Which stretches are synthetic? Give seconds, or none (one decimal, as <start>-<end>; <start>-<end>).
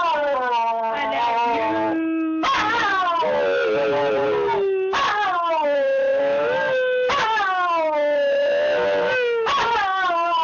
none